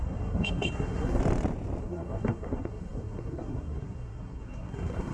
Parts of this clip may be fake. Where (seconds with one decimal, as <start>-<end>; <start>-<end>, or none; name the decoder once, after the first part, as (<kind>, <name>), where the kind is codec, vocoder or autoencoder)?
0.0-1.2 (codec, SNAC); 1.8-5.1